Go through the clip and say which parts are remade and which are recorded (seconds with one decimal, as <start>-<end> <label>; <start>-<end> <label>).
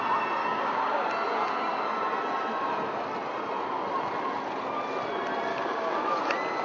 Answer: 0.0-0.4 recorded; 0.4-1.1 remade; 1.1-5.5 recorded; 5.5-6.0 remade; 6.0-6.6 recorded